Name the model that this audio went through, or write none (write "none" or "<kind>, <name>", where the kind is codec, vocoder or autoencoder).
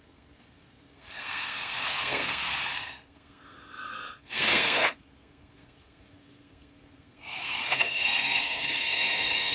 codec, SNAC